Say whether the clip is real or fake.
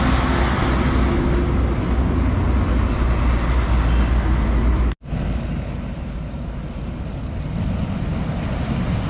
real